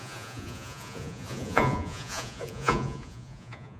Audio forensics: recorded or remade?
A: remade